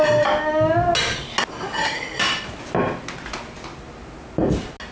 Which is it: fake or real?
real